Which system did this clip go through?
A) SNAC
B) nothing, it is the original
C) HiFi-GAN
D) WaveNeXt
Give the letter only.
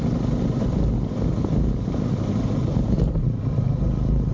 B